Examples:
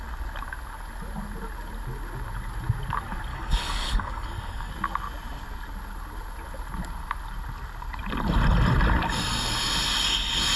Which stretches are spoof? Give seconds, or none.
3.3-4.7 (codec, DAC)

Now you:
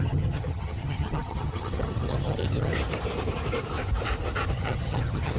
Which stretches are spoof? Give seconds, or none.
0.0-2.7 (vocoder, HiFi-GAN); 4.5-5.4

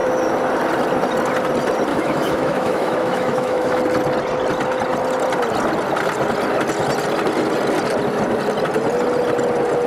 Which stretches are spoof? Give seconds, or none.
1.9-3.8 (autoencoder, DAC-VAE)

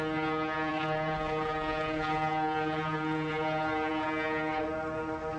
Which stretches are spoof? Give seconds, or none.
0.7-3.9 (vocoder, BigVGAN v2)